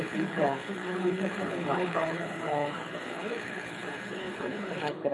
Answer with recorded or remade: remade